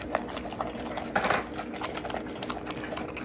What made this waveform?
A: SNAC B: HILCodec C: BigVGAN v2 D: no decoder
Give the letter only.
D